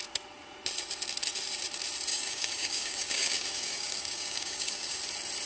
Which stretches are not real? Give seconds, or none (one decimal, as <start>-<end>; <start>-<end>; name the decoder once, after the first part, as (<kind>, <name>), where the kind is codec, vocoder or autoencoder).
2.1-5.0 (codec, DAC)